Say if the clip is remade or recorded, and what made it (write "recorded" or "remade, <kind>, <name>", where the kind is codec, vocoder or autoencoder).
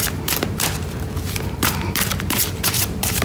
remade, vocoder, BigVGAN v2